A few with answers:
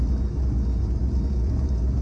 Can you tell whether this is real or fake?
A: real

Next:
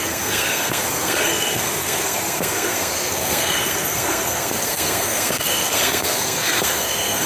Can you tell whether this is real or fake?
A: fake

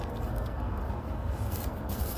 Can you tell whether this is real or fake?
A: fake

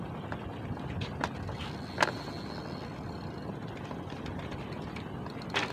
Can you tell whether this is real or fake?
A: real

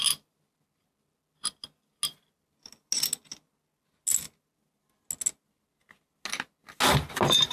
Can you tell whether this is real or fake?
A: real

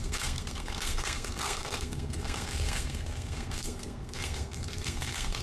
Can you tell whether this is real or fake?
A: fake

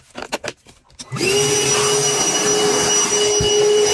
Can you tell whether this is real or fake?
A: real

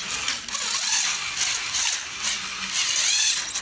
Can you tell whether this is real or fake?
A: real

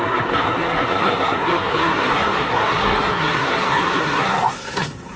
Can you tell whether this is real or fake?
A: fake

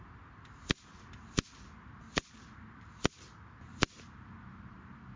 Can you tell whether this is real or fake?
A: real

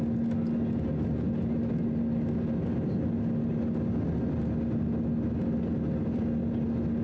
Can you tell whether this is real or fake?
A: real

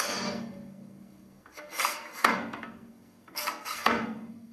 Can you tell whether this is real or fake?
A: fake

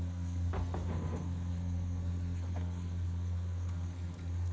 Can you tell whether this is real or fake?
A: fake